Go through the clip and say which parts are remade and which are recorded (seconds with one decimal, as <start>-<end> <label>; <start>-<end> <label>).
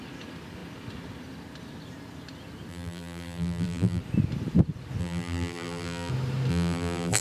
0.0-2.7 recorded; 2.7-4.0 remade; 4.0-5.0 recorded; 5.0-6.1 remade; 6.1-6.5 recorded; 6.5-7.2 remade